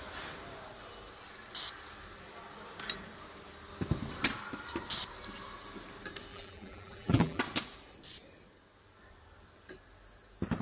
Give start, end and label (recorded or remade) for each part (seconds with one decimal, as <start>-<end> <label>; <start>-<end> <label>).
0.0-6.3 recorded; 6.3-7.4 remade; 7.4-10.6 recorded